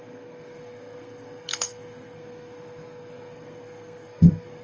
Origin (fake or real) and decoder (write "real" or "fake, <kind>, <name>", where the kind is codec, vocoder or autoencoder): fake, codec, SNAC